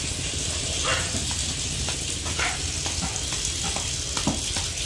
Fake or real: real